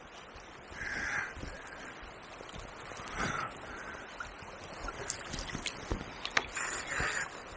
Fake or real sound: real